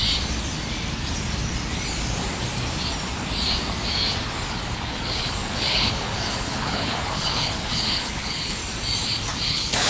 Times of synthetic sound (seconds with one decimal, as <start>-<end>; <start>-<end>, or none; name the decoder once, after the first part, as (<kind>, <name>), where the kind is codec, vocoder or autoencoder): 4.5-8.6 (codec, HILCodec); 9.4-9.9